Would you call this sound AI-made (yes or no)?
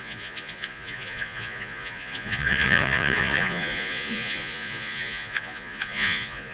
yes